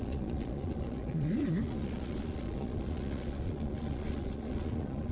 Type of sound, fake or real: fake